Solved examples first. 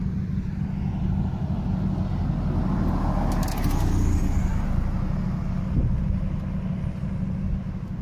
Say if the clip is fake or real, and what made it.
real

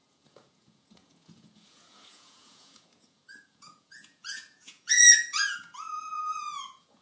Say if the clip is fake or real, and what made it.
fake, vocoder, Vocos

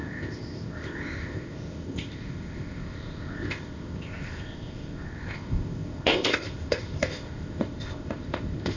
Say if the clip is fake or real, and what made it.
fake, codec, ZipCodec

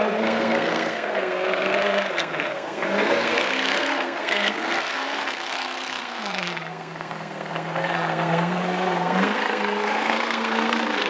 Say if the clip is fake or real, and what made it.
fake, codec, SNAC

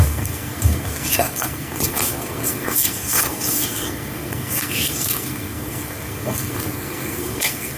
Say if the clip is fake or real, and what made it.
fake, codec, SNAC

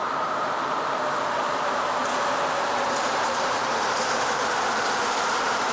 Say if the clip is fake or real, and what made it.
fake, vocoder, BigVGAN v2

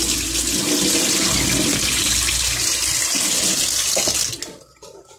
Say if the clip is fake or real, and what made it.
real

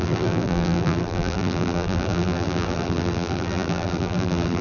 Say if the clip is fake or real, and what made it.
fake, vocoder, BigVGAN v2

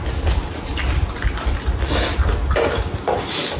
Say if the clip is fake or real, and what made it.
real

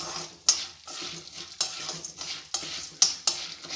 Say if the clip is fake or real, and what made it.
real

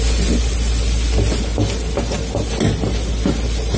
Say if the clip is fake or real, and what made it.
real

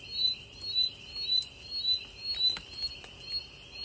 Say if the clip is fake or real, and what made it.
real